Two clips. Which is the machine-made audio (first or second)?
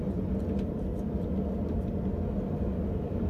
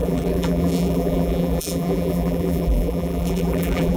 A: second